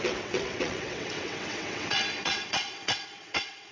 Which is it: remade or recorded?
remade